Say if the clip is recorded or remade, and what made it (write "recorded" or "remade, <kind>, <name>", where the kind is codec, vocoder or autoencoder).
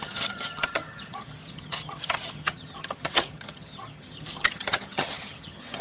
remade, vocoder, HiFi-GAN